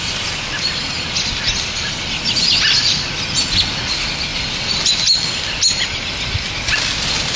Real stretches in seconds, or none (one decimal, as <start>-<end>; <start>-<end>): 0.0-7.4